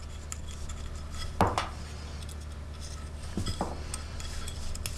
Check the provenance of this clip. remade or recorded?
recorded